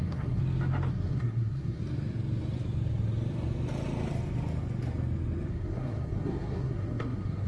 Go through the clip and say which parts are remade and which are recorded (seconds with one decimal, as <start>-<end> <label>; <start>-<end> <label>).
0.0-0.4 remade; 0.4-0.9 recorded; 0.9-1.8 remade; 1.8-5.5 recorded; 5.5-7.5 remade